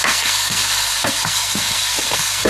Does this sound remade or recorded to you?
remade